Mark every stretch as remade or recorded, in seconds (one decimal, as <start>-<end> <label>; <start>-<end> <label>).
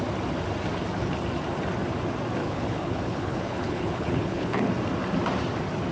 0.0-2.4 recorded; 2.4-4.7 remade; 4.7-5.9 recorded